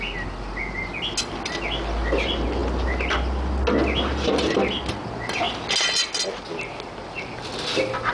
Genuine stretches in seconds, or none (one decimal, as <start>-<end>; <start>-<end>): 0.0-8.1